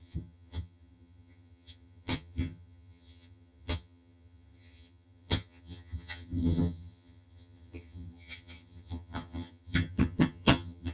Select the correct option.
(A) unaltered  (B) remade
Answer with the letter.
B